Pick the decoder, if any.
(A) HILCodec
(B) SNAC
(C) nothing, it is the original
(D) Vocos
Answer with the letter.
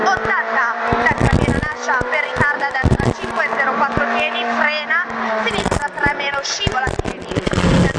C